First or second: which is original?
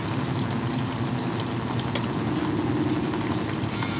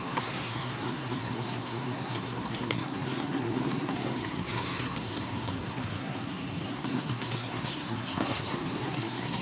first